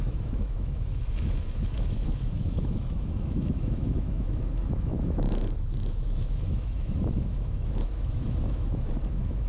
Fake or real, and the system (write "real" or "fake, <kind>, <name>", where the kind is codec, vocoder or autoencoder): fake, autoencoder, DAC-VAE